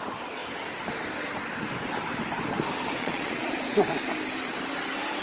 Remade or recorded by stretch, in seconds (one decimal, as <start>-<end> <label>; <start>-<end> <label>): 0.0-3.0 recorded; 3.0-3.6 remade; 3.6-5.2 recorded